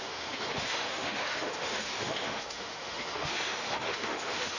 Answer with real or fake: fake